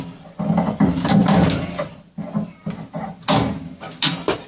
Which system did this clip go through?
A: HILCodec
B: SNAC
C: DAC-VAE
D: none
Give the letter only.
D